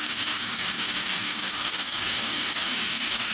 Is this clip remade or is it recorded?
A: remade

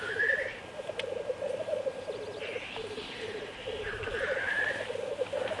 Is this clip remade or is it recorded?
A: recorded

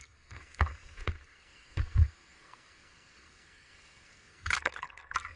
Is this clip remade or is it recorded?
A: remade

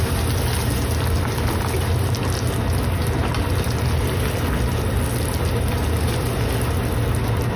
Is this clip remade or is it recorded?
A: recorded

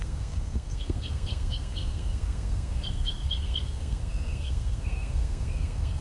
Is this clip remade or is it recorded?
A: remade